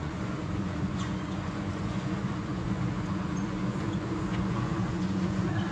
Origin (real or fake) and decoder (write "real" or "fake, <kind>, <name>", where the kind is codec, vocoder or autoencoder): fake, vocoder, Vocos